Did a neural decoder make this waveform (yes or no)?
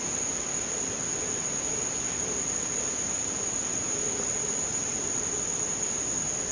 no